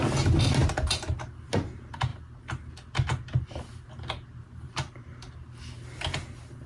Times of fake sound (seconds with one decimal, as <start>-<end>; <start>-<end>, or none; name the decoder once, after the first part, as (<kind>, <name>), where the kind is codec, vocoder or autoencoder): 0.6-1.2 (vocoder, BigVGAN v2)